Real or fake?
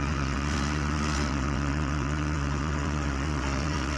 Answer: fake